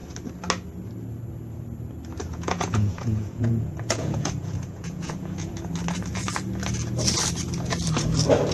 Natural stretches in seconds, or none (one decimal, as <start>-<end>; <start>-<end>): 0.0-2.3; 5.5-8.5